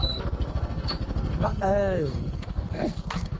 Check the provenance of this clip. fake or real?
fake